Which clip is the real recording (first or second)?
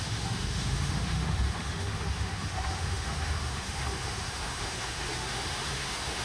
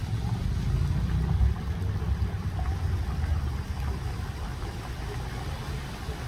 second